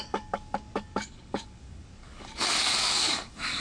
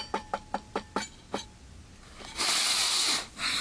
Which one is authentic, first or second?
second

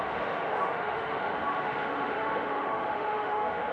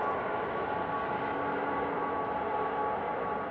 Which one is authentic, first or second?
second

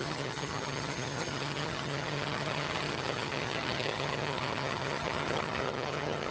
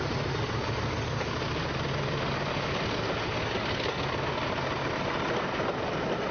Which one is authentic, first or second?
second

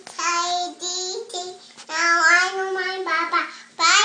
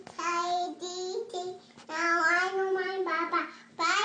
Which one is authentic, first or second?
first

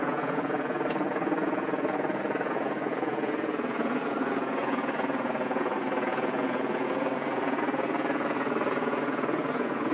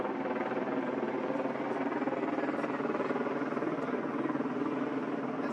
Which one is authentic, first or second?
second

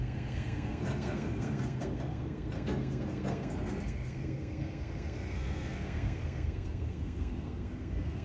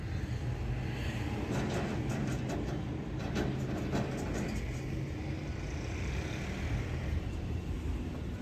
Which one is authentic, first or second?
second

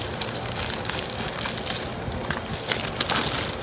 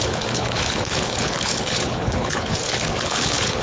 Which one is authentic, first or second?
first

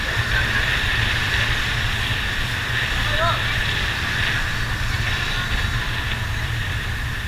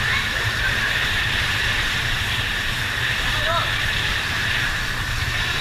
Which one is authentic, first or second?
first